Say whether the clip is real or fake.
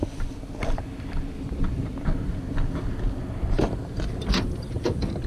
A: real